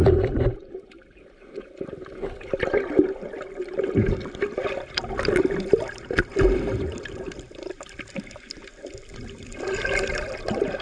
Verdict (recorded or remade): remade